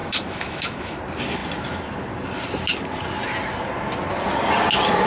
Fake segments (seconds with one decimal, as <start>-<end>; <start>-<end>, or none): 0.0-1.0